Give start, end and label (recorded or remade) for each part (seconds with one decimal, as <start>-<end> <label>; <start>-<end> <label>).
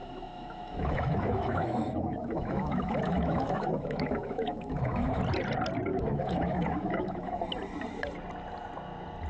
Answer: 0.0-5.2 remade; 5.2-5.9 recorded; 5.9-7.4 remade; 7.4-9.3 recorded